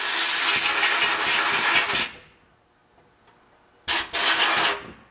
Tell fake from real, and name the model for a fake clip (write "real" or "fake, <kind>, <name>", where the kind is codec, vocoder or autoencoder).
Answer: real